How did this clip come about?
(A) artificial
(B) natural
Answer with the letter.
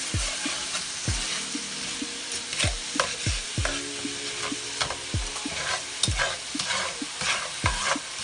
B